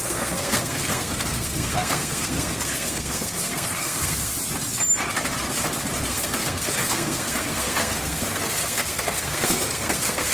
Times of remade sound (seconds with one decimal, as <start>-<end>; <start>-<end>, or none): 0.0-4.3; 6.0-10.3